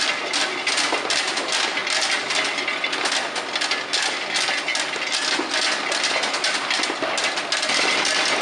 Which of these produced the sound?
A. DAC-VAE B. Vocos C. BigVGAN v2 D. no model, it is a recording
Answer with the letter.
D